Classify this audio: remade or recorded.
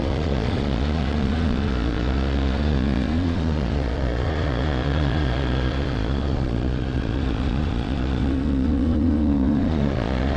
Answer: remade